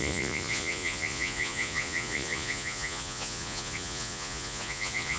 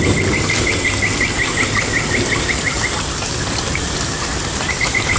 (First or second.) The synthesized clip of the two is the first